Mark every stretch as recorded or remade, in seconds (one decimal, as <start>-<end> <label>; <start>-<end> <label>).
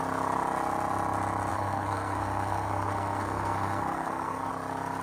0.0-1.5 recorded; 1.5-4.5 remade; 4.5-5.0 recorded